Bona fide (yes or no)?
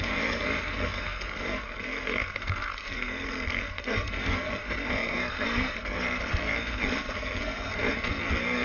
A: no